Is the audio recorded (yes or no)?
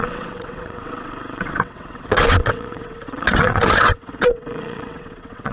no